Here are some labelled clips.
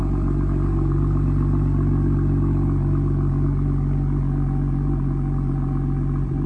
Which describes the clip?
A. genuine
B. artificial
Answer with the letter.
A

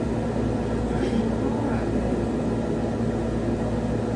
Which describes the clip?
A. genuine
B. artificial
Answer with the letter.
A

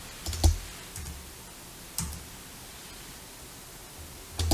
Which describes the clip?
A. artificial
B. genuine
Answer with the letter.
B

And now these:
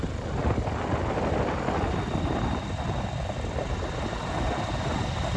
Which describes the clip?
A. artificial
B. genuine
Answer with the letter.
B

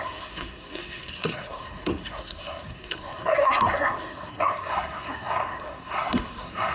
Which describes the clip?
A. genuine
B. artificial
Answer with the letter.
B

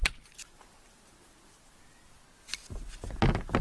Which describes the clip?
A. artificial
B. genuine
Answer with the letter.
B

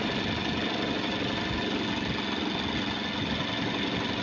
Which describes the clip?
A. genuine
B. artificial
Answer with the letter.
A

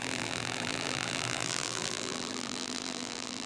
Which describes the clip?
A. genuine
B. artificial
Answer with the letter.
B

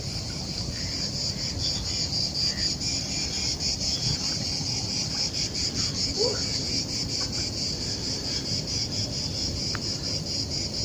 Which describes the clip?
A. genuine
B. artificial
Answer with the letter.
A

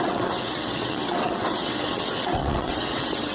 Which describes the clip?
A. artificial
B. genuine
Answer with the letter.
A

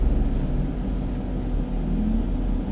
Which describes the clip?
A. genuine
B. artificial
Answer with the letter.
A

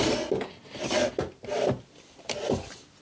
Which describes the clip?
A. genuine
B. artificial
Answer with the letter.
A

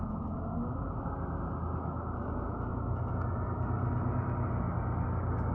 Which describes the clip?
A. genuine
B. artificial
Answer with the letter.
A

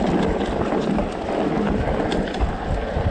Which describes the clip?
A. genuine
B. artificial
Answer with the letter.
A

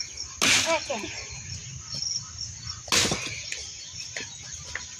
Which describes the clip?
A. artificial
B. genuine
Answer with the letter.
B